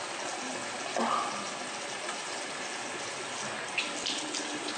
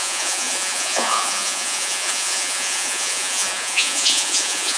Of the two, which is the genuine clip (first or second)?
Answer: first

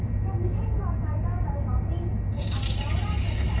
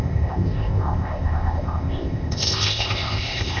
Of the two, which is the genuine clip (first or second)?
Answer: first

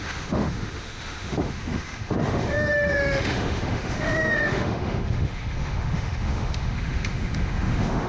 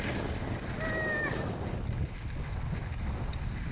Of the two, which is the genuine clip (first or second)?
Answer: second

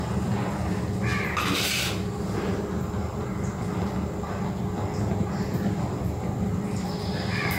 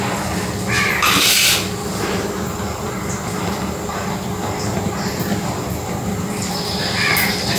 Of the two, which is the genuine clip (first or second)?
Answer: first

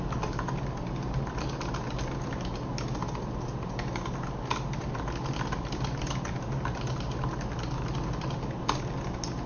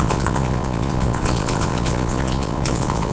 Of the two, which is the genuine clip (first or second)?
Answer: first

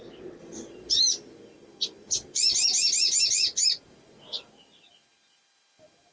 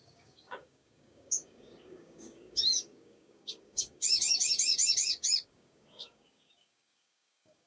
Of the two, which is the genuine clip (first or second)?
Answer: first